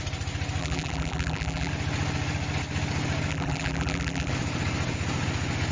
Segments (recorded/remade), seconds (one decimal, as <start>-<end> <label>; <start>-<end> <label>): 0.0-0.6 recorded; 0.6-1.7 remade; 1.7-3.3 recorded; 3.3-4.3 remade; 4.3-5.7 recorded